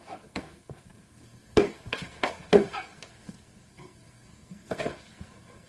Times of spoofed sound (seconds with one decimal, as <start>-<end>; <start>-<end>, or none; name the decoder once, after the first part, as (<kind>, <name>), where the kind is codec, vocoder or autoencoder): 0.0-5.7 (codec, SNAC)